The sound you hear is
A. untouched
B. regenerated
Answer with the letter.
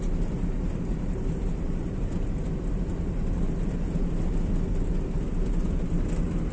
A